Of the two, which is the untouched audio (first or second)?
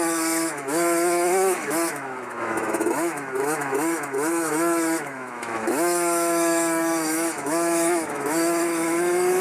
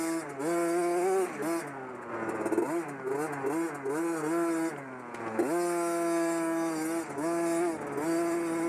second